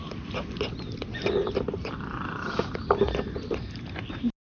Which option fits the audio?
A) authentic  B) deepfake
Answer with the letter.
A